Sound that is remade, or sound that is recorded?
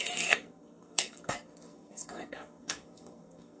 remade